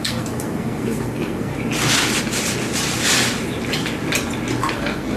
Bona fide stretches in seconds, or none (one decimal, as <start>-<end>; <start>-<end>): 1.5-4.6